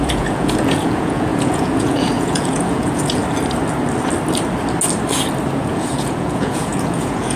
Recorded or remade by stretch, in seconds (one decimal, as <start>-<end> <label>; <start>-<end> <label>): 0.0-3.2 remade; 3.2-5.6 recorded; 5.6-7.4 remade